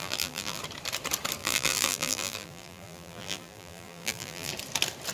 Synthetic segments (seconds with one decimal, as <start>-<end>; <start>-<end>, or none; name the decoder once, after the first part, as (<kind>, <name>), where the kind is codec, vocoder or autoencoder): 0.0-0.6 (vocoder, BigVGAN v2); 1.4-4.5